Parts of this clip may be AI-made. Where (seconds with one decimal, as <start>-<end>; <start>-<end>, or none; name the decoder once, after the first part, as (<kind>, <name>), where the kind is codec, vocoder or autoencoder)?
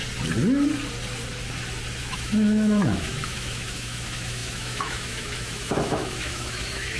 2.0-7.0 (autoencoder, DAC-VAE)